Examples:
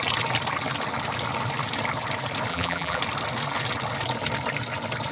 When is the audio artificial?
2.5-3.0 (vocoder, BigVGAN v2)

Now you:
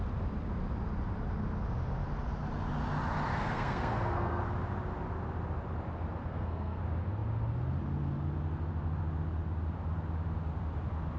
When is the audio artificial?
3.3-4.4 (codec, SNAC); 6.2-6.8

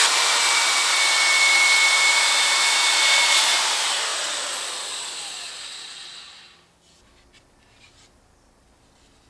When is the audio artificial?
0.0-0.6 (vocoder, BigVGAN v2); 2.1-4.1; 7.4-9.3

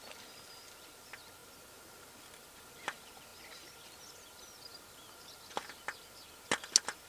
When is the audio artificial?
none

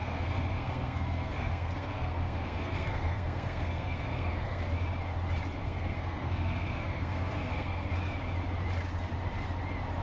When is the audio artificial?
0.0-4.6 (codec, SNAC); 5.6-7.9